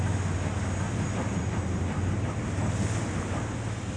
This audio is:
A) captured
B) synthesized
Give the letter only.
A